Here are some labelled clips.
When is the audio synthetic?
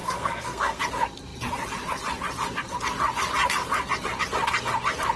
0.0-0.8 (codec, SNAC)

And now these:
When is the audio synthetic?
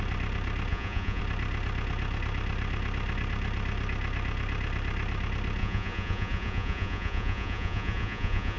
0.7-1.2 (vocoder, Vocos); 5.6-8.6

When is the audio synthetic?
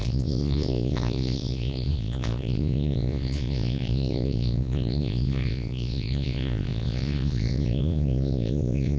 0.0-9.0 (vocoder, Vocos)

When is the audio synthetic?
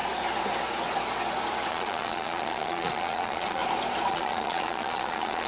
1.7-3.6 (vocoder, Vocos); 4.1-5.5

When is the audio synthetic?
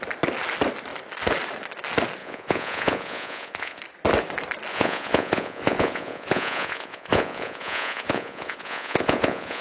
2.2-3.8 (vocoder, Vocos); 4.7-9.6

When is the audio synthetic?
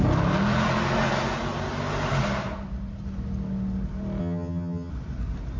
4.2-4.9 (vocoder, HiFi-GAN)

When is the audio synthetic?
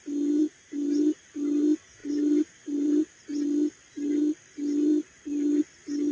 0.4-1.2 (vocoder, BigVGAN v2); 2.0-3.0; 4.9-5.6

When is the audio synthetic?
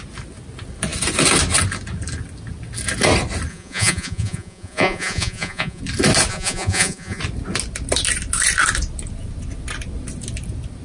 3.5-5.8 (vocoder, Vocos); 6.3-7.2